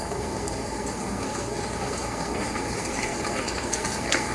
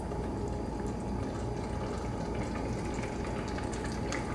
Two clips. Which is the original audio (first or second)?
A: second